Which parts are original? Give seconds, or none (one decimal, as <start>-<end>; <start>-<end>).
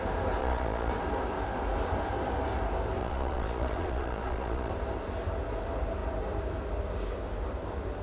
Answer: 0.0-0.4; 0.9-3.0; 4.7-8.0